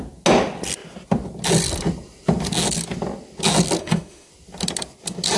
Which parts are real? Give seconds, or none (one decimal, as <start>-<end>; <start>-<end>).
0.0-3.8; 4.3-5.4

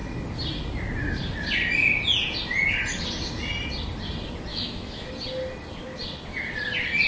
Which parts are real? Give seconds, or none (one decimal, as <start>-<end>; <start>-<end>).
0.0-4.5; 5.1-7.1